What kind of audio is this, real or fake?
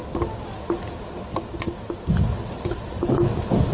real